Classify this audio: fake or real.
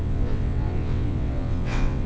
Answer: fake